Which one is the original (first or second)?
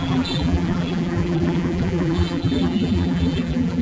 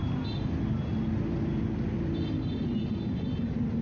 second